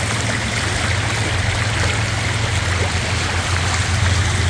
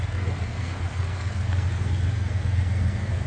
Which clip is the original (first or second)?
first